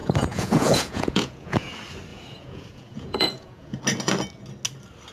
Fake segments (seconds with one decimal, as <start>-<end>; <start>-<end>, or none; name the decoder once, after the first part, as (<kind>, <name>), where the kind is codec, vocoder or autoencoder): 0.0-1.7 (vocoder, Vocos); 2.1-3.8